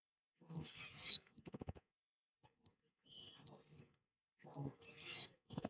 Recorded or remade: remade